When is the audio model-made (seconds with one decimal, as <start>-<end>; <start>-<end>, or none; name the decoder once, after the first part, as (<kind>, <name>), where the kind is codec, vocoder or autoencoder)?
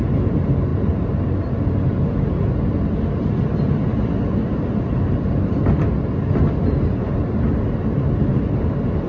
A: none